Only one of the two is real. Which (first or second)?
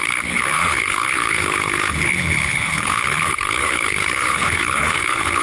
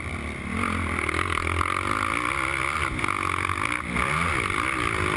second